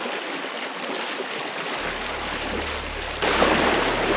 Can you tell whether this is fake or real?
real